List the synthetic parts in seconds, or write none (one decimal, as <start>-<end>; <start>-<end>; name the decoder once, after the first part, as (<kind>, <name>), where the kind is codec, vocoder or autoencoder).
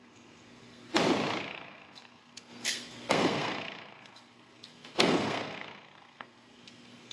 0.0-0.9 (codec, SNAC); 1.4-7.1